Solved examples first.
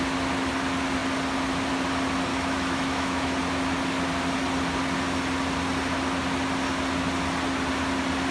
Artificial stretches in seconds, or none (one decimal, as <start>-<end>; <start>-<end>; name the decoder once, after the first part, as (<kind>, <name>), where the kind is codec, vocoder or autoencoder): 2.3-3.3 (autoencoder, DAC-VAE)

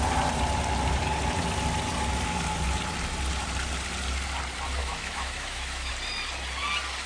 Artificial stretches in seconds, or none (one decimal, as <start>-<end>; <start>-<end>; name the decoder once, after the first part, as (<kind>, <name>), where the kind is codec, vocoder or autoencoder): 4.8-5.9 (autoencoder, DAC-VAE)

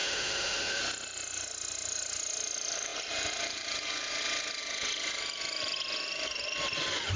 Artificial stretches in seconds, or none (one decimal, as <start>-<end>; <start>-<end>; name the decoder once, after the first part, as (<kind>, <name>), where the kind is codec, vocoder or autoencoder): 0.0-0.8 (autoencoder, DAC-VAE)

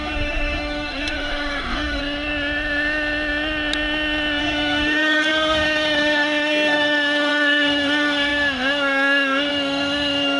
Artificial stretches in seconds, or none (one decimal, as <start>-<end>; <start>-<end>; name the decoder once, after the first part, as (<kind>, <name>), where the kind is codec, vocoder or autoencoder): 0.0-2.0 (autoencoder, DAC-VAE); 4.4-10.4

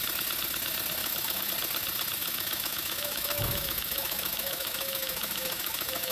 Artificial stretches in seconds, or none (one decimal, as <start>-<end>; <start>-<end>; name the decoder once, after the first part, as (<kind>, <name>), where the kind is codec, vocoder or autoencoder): 1.0-1.5 (autoencoder, DAC-VAE); 2.2-6.1